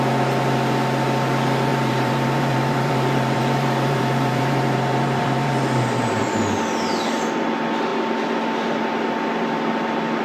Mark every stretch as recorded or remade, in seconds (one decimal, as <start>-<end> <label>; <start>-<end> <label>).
0.0-1.7 recorded; 1.7-6.2 remade; 6.2-10.2 recorded